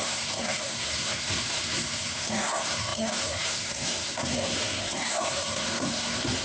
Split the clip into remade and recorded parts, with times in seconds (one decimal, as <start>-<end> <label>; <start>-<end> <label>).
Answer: 0.0-6.4 remade